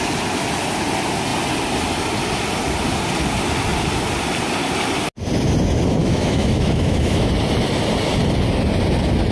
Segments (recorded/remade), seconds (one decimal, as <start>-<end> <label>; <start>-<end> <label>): 0.0-6.0 recorded; 6.0-7.3 remade; 7.3-9.3 recorded

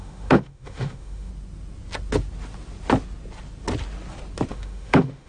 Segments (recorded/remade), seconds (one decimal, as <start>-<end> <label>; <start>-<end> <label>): 0.0-1.3 remade; 1.3-4.5 recorded; 4.5-5.3 remade

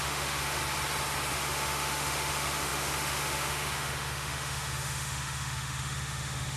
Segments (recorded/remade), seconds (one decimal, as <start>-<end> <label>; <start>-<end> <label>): 0.0-0.6 remade; 0.6-1.3 recorded; 1.3-6.6 remade

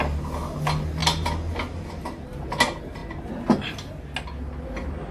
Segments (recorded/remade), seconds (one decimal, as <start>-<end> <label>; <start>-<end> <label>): 0.0-5.1 recorded

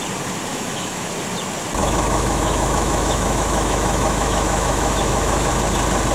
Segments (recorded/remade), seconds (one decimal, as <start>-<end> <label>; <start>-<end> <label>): 0.0-0.5 recorded; 0.5-1.1 remade; 1.1-1.8 recorded; 1.8-5.5 remade; 5.5-6.1 recorded

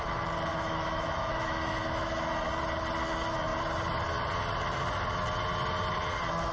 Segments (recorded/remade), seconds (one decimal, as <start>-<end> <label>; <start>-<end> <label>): 0.0-0.5 recorded; 0.5-2.3 remade; 2.3-6.5 recorded

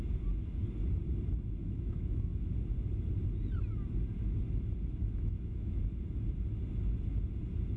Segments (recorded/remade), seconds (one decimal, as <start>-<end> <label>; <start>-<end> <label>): 0.0-1.6 recorded; 1.6-2.4 remade; 2.4-5.0 recorded; 5.0-5.8 remade; 5.8-7.8 recorded